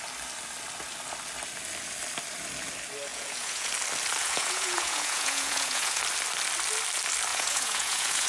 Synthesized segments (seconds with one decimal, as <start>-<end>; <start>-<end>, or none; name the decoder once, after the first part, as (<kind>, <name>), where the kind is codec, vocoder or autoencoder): 3.1-3.7 (vocoder, Vocos); 4.2-6.0; 7.3-8.3